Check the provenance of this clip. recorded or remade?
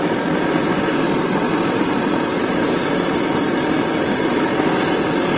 recorded